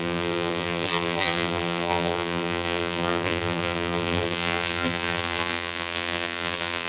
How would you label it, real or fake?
fake